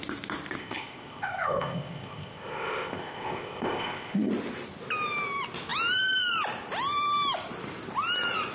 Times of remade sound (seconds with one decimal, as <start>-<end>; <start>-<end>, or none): 0.6-4.3